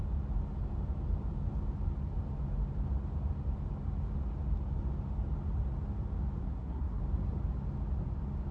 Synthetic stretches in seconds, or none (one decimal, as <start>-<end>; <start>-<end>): 6.4-7.0